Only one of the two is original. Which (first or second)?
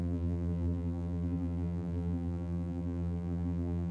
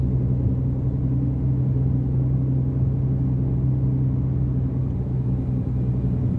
second